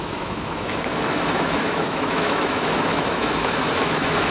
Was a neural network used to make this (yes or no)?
yes